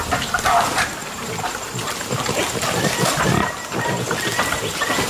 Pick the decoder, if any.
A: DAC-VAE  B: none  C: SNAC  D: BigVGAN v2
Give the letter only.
B